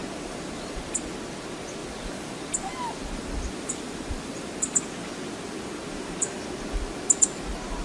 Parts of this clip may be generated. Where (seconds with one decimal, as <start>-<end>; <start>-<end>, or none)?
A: 0.0-0.8; 1.8-6.5